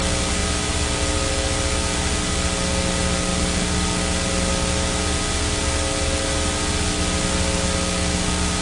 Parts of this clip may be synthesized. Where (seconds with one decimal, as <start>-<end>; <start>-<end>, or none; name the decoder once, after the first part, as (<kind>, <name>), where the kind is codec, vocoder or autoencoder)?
none